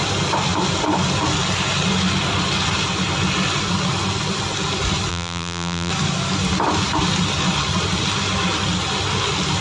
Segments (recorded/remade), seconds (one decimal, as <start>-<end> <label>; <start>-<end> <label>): 0.0-5.1 recorded; 5.1-5.9 remade; 5.9-9.6 recorded